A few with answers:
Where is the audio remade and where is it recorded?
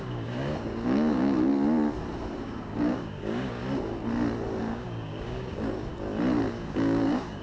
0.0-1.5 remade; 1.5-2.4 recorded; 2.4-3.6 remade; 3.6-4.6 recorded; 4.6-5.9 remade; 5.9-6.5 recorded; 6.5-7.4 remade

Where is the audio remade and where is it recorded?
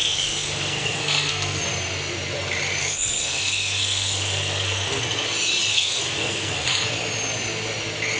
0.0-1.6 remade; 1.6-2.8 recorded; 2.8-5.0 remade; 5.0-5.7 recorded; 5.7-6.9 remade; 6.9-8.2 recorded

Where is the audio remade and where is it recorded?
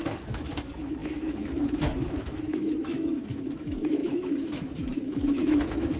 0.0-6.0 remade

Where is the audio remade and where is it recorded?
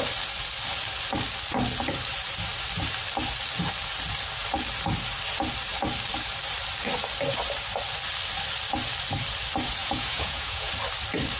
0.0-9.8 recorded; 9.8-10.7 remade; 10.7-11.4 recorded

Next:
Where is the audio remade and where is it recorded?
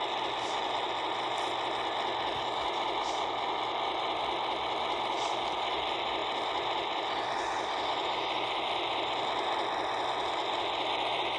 0.0-11.4 recorded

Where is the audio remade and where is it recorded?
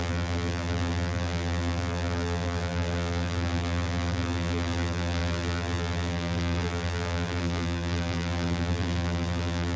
0.0-9.8 remade